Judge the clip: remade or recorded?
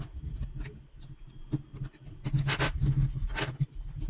recorded